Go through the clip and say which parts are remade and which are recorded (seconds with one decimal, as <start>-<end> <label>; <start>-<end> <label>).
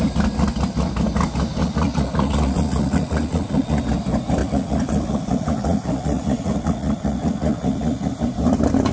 0.0-1.6 recorded; 1.6-3.8 remade; 3.8-4.4 recorded; 4.4-8.1 remade; 8.1-8.9 recorded